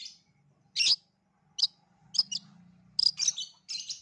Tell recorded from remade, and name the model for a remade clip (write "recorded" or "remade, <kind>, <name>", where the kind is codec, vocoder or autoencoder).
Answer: recorded